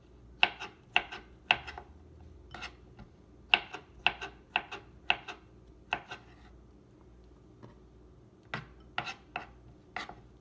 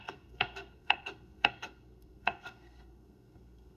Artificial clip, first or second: second